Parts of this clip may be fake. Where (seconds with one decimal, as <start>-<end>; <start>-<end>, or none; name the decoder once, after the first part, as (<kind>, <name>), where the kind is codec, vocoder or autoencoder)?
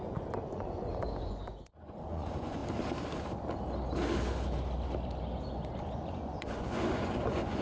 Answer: 0.0-2.6 (vocoder, Vocos); 5.8-7.6